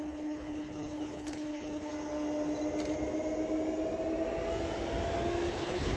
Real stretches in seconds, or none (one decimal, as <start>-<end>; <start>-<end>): 1.9-5.5